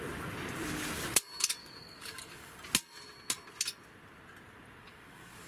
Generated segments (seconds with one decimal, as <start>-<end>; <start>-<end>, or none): 1.6-2.5; 4.8-5.5